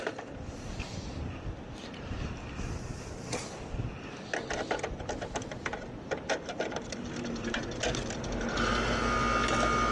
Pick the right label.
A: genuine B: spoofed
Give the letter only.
A